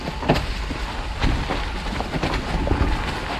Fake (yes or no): no